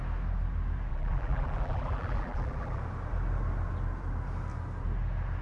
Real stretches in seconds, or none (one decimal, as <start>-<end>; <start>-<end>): 0.0-0.9; 2.8-5.4